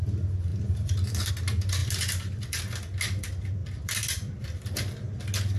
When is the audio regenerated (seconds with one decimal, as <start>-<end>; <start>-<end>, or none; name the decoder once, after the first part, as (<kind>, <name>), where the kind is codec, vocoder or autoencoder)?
0.5-1.3 (vocoder, BigVGAN v2); 1.8-2.6; 3.6-5.1

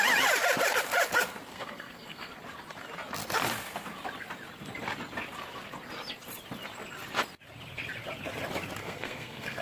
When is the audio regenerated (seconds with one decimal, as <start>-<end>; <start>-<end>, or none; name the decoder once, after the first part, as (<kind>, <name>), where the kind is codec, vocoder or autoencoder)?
1.5-2.3 (codec, SNAC); 8.8-9.6

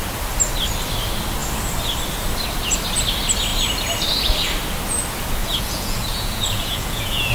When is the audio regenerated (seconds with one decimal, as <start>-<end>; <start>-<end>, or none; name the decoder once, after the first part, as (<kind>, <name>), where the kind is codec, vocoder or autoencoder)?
5.4-7.3 (vocoder, Vocos)

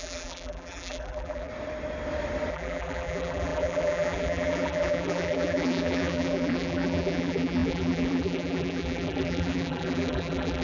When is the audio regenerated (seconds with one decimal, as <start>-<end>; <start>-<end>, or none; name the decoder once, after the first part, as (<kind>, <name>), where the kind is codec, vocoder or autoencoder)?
0.0-1.5 (vocoder, BigVGAN v2); 2.5-10.6

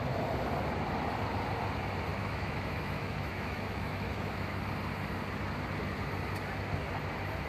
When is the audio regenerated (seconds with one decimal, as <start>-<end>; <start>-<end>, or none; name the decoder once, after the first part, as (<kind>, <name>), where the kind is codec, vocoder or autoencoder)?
2.1-4.7 (autoencoder, DAC-VAE)